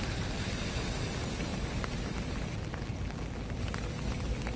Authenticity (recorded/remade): recorded